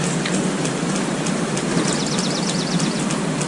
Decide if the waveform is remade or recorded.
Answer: recorded